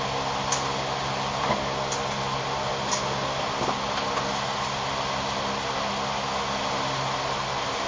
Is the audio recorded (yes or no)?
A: yes